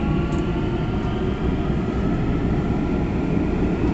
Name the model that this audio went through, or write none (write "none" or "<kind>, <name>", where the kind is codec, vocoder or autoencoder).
none